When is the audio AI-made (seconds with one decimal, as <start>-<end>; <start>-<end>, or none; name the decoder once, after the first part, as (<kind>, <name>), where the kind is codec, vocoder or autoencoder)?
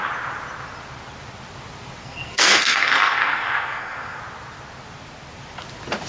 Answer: 2.0-4.2 (codec, SNAC)